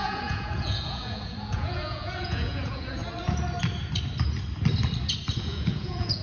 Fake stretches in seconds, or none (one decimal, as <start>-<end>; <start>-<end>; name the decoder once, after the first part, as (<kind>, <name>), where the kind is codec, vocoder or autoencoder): 0.0-3.0 (vocoder, Vocos); 5.4-6.2